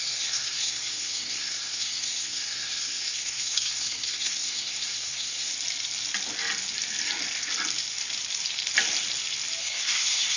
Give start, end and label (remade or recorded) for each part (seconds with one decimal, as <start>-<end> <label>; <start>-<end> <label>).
0.0-5.5 remade; 5.5-9.6 recorded; 9.6-10.4 remade